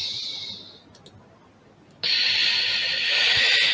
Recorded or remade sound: recorded